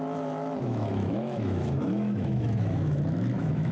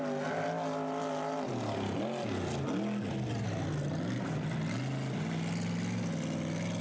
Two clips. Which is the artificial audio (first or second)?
first